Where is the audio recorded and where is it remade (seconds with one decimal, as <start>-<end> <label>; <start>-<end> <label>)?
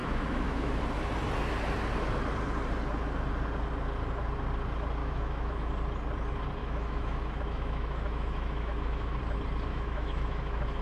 0.0-0.8 remade; 0.8-5.0 recorded; 5.0-5.7 remade; 5.7-6.6 recorded; 6.6-9.2 remade; 9.2-9.7 recorded; 9.7-10.8 remade